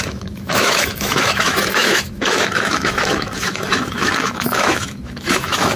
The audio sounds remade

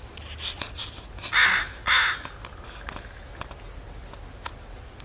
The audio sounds recorded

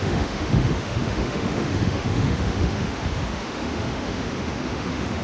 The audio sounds remade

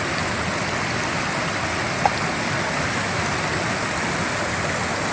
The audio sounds recorded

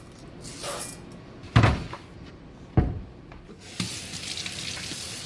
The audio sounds recorded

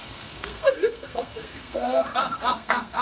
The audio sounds remade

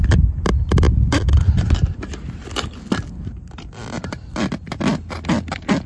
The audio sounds recorded